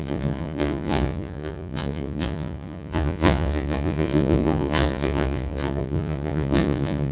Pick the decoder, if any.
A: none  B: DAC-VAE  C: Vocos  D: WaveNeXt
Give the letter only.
C